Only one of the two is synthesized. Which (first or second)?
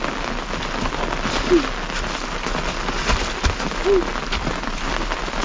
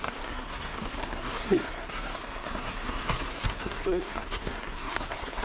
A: second